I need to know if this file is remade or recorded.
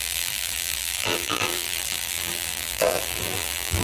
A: remade